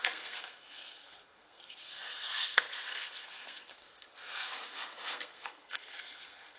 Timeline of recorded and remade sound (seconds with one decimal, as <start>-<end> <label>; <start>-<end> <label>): 0.0-6.6 remade